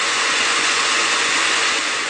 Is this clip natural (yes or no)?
no